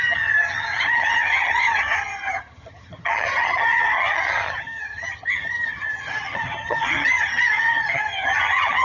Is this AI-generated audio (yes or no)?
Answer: yes